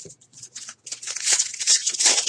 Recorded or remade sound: remade